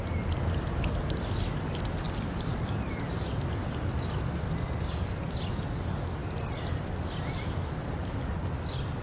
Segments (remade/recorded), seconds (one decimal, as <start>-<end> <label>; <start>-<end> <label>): 0.0-9.0 recorded